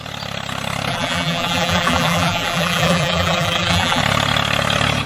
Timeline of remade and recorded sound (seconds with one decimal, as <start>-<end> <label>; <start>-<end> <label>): 0.0-0.9 recorded; 0.9-4.0 remade; 4.0-5.1 recorded